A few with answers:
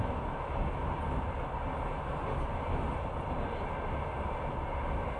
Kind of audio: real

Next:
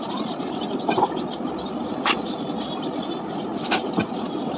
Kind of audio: real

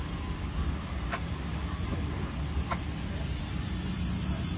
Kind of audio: fake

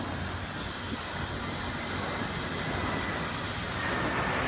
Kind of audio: real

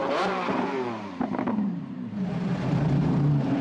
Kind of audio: fake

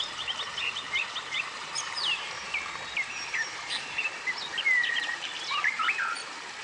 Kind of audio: fake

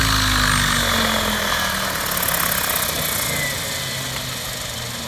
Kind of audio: real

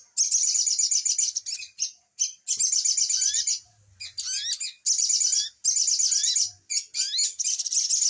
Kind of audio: real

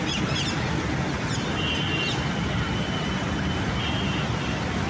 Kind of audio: real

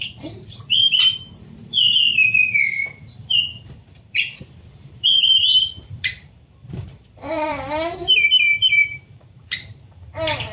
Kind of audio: fake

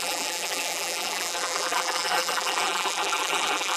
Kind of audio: fake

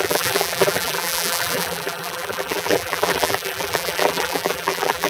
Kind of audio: fake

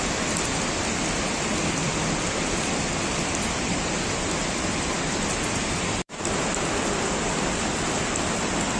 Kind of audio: fake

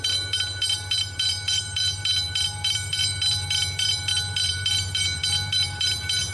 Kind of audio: fake